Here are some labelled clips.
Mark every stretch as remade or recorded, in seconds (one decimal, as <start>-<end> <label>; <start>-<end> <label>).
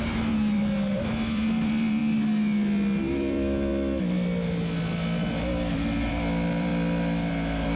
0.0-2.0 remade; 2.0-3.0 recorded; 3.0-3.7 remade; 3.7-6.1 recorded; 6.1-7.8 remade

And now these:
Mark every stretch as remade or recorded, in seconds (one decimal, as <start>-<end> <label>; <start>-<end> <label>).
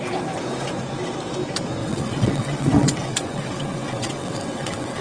0.0-1.8 recorded; 1.8-5.0 remade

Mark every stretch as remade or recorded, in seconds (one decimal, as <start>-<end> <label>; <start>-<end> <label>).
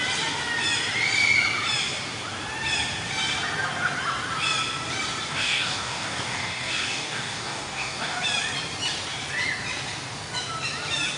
0.0-5.3 recorded; 5.3-8.2 remade; 8.2-11.2 recorded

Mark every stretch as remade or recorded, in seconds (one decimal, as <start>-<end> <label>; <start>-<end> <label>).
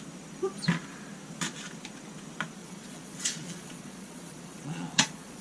0.0-2.6 recorded; 2.6-5.4 remade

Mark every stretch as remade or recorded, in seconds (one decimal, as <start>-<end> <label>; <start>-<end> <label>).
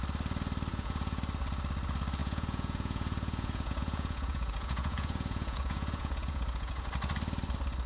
0.0-0.7 recorded; 0.7-1.2 remade; 1.2-2.2 recorded; 2.2-6.9 remade; 6.9-7.9 recorded